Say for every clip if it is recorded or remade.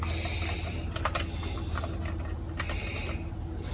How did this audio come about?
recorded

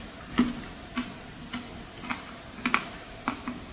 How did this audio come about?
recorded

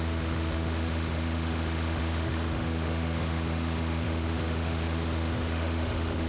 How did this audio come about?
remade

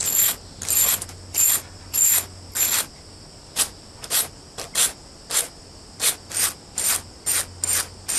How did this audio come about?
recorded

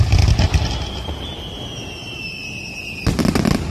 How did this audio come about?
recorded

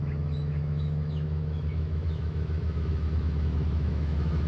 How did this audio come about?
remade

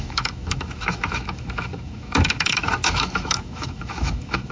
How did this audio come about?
remade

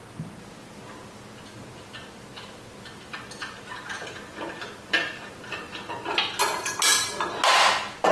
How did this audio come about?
recorded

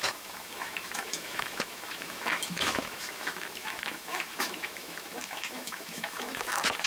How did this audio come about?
remade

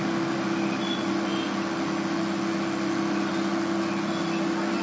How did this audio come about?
recorded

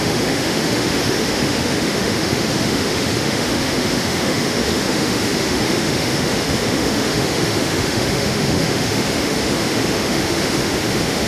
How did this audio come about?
remade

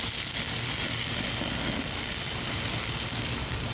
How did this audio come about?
recorded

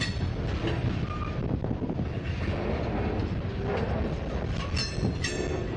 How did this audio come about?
recorded